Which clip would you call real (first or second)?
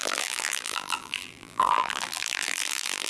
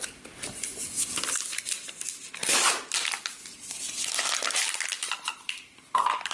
second